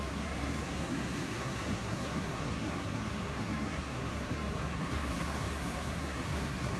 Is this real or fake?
fake